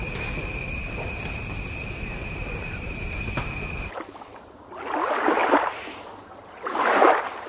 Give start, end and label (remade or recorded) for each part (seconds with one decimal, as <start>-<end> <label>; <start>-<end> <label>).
0.0-2.2 recorded; 2.2-3.0 remade; 3.0-5.4 recorded; 5.4-7.0 remade; 7.0-7.5 recorded